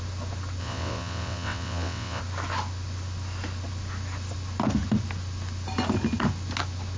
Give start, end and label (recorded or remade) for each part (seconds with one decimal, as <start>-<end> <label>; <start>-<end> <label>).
0.0-0.6 recorded; 0.6-2.2 remade; 2.2-7.0 recorded